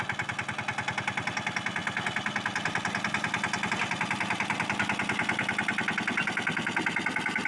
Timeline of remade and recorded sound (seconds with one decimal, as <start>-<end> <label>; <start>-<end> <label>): 0.0-7.5 recorded